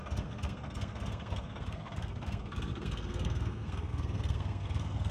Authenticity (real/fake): fake